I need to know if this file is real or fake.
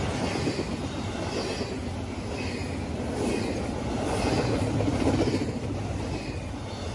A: real